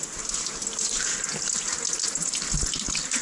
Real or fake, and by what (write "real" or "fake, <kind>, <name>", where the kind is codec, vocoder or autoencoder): real